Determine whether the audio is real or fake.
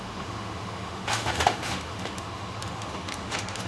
fake